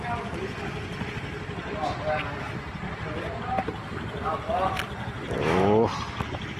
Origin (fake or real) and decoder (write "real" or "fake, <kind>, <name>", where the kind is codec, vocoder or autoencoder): real